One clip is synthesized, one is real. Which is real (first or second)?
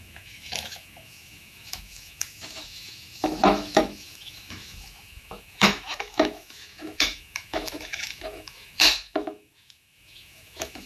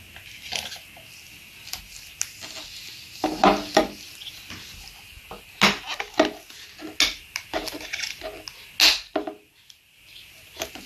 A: second